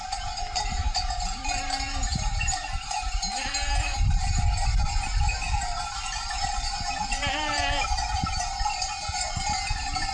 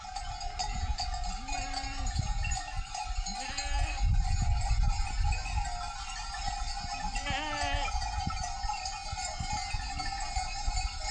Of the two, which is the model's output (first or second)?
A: first